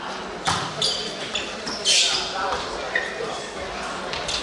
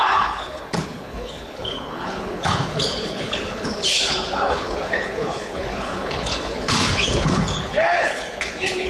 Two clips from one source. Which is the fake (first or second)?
second